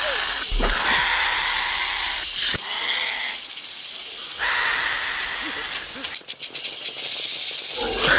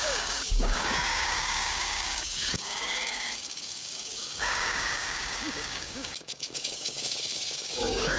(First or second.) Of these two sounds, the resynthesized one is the second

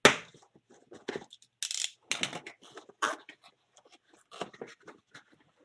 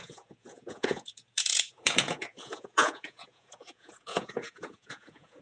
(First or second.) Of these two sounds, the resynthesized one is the second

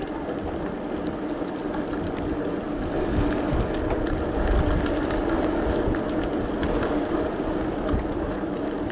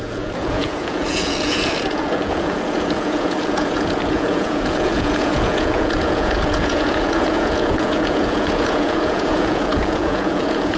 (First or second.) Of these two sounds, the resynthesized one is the second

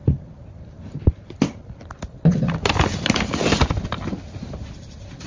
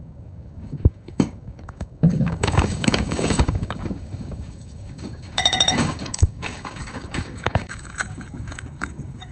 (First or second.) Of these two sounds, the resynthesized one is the second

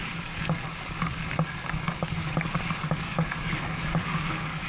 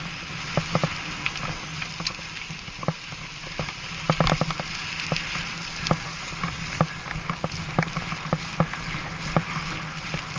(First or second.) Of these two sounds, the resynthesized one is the first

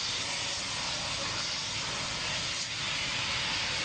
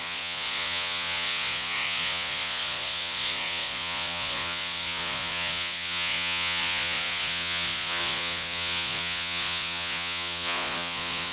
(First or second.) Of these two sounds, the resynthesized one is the second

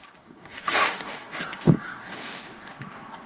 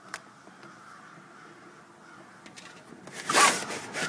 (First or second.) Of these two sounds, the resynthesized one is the first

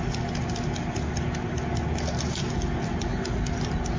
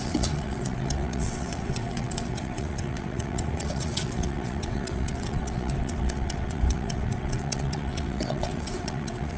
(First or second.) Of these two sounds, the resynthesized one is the second